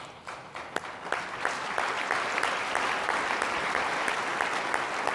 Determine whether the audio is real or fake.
real